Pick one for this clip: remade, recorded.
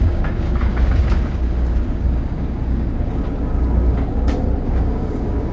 remade